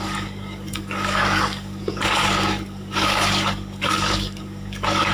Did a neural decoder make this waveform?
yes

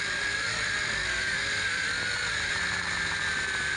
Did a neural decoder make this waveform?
no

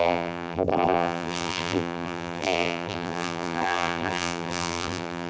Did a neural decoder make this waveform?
yes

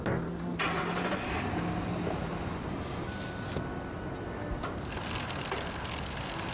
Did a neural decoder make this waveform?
no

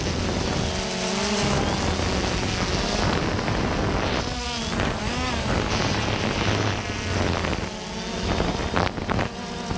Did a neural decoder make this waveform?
no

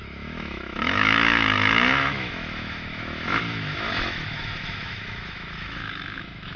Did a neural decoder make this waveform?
yes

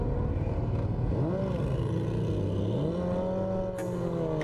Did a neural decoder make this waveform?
no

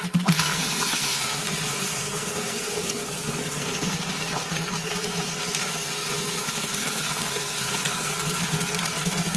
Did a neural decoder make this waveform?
yes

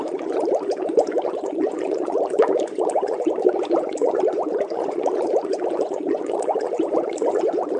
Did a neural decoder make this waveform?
yes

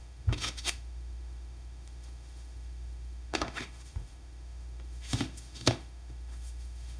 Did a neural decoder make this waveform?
yes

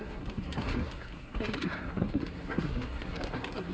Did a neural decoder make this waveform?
yes